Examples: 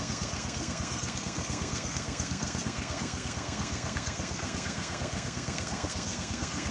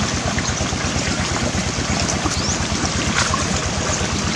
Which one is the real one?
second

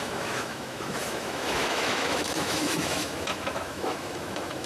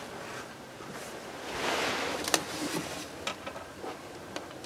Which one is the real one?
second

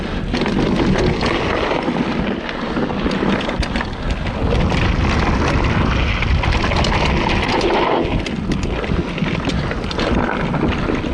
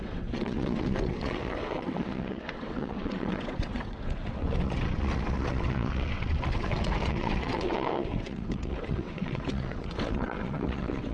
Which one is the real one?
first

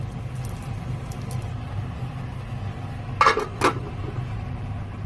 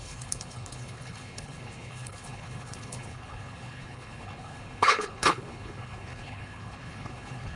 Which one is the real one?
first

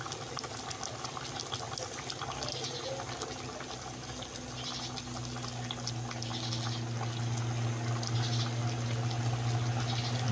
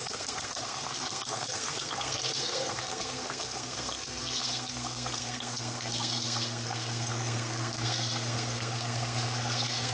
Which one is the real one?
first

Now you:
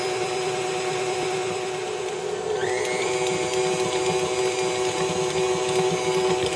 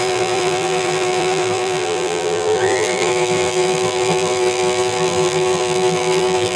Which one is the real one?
first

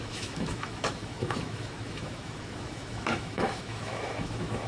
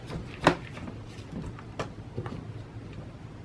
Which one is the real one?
second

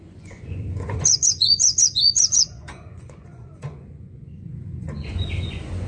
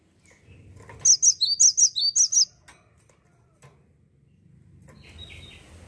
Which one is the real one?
second